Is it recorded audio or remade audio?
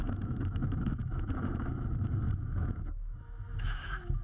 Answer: remade